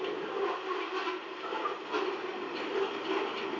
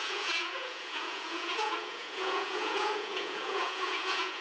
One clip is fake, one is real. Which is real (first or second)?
first